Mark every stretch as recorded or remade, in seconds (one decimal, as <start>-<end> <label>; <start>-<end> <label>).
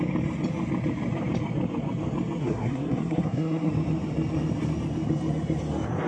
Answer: 0.0-2.4 recorded; 2.4-3.7 remade; 3.7-6.1 recorded